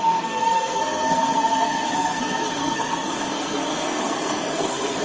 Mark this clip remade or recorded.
remade